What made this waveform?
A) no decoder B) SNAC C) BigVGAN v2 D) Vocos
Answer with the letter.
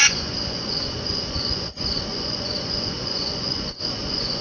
D